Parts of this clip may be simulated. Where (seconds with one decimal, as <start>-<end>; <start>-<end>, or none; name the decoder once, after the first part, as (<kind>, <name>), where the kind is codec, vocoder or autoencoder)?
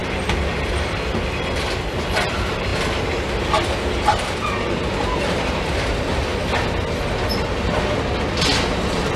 1.5-2.7 (vocoder, BigVGAN v2); 4.7-6.3